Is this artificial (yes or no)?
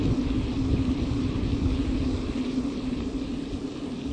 no